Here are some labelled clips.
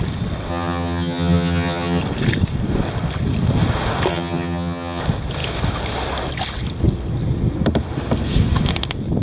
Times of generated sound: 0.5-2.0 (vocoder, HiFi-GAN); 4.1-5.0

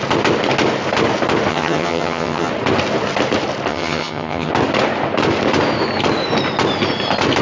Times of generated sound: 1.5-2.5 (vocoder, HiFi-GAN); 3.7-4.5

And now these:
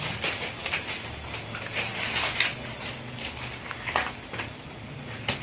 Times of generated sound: none

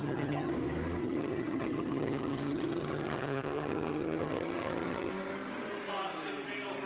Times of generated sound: 0.0-0.5 (vocoder, HiFi-GAN); 1.0-5.1